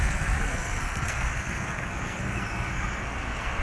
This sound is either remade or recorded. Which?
remade